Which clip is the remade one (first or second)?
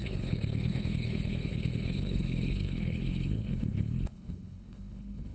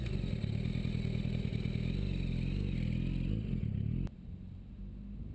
first